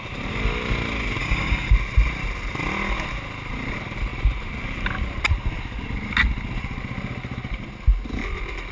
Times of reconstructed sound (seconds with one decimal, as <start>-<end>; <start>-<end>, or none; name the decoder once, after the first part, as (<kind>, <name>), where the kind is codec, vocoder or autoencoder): 1.2-1.7 (codec, DAC)